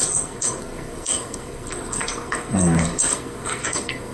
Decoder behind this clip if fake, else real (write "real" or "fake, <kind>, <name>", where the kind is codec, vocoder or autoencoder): fake, codec, SNAC